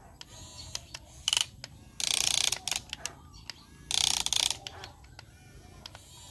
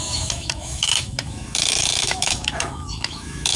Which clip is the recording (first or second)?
first